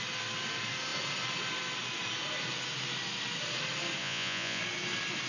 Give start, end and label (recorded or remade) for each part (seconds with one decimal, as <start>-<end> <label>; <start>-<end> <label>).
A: 0.0-4.0 recorded; 4.0-4.6 remade; 4.6-5.3 recorded